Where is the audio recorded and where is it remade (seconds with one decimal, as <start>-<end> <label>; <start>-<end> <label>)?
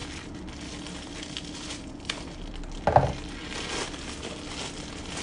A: 0.0-5.2 recorded